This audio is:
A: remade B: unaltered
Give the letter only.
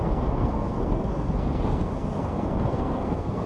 A